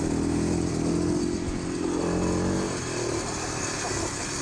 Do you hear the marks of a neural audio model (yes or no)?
no